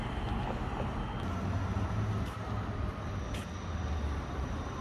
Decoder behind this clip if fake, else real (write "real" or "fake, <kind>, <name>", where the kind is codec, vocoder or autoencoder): real